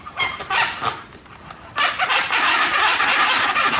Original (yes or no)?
yes